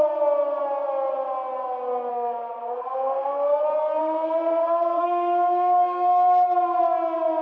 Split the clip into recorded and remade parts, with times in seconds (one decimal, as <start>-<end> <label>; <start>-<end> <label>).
0.0-2.1 recorded; 2.1-3.6 remade; 3.6-4.0 recorded; 4.0-6.8 remade; 6.8-7.4 recorded